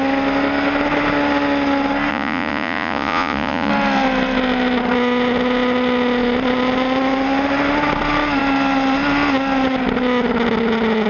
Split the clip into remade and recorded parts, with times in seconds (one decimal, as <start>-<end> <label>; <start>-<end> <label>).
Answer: 0.0-2.1 recorded; 2.1-3.7 remade; 3.7-11.1 recorded